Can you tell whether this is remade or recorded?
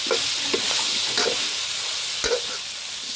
recorded